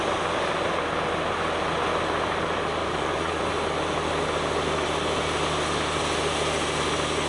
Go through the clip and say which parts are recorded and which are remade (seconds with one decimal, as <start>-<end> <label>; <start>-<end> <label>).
0.0-2.8 recorded; 2.8-3.5 remade; 3.5-7.3 recorded